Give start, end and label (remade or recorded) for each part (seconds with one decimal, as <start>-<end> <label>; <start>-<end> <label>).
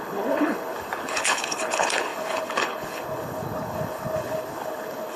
0.0-5.2 remade